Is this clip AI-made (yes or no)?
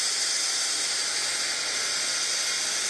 no